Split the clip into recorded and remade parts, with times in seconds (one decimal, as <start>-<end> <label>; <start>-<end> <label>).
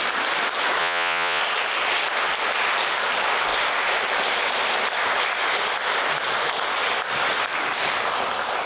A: 0.0-0.8 recorded; 0.8-1.4 remade; 1.4-8.7 recorded